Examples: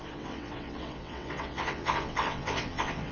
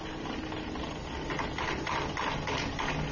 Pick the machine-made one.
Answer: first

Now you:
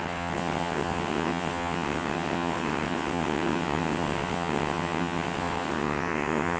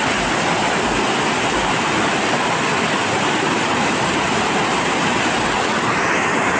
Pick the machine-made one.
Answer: first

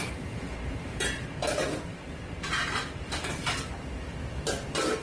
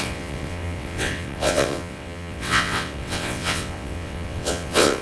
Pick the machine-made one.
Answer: second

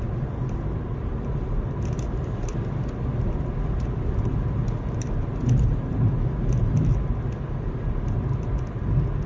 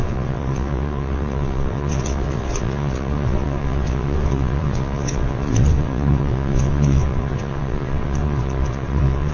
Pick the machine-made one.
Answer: second